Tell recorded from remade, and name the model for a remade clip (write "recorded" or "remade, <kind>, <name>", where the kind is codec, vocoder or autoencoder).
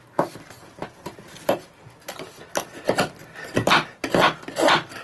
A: recorded